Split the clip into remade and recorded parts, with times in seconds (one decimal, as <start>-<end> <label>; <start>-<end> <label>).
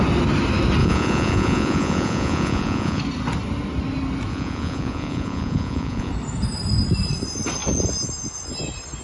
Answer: 0.0-0.8 recorded; 0.8-3.0 remade; 3.0-4.3 recorded; 4.3-6.1 remade; 6.1-9.0 recorded